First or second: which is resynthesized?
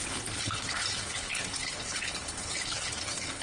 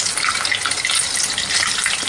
first